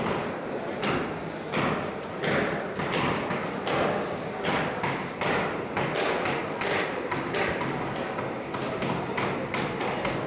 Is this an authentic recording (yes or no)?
yes